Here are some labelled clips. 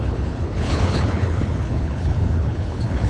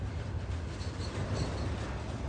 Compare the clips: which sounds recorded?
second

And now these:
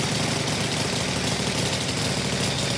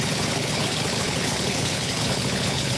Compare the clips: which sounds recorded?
first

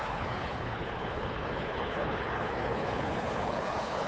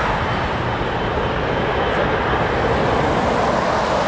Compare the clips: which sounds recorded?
second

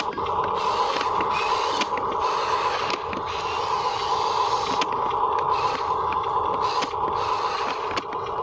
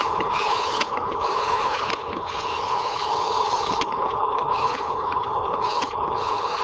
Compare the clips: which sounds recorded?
first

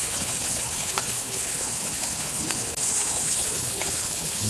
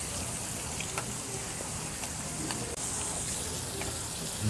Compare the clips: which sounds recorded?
second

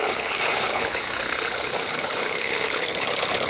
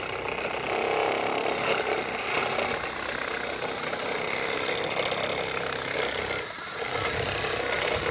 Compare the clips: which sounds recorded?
second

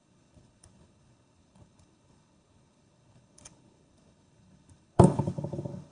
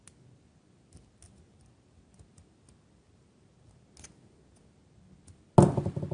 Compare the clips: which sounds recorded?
second